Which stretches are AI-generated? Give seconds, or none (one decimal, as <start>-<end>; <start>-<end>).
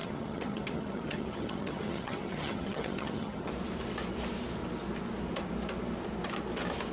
0.0-3.5